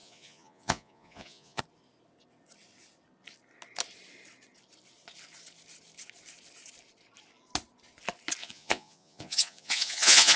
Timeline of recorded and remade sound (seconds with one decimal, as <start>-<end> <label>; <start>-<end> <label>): 0.0-1.6 remade; 1.6-8.4 recorded; 8.4-10.4 remade

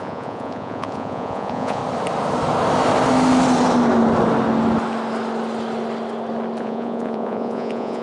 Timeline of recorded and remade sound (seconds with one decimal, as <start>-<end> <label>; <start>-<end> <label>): 0.0-1.8 remade; 1.8-6.6 recorded; 6.6-8.0 remade